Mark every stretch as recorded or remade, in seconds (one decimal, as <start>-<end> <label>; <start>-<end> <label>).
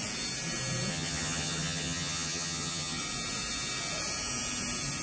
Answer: 0.0-0.9 recorded; 0.9-3.0 remade; 3.0-5.0 recorded